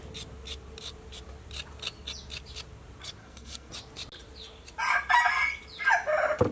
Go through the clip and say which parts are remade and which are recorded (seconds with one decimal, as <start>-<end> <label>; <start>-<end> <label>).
0.0-3.2 recorded; 3.2-3.7 remade; 3.7-6.5 recorded